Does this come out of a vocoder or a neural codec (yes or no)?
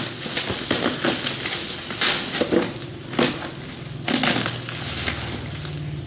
no